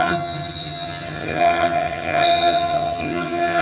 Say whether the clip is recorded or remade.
remade